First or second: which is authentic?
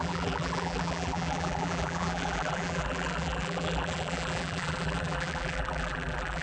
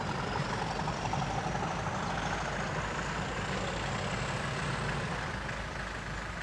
second